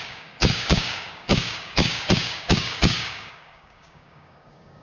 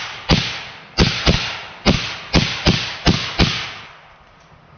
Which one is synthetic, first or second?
first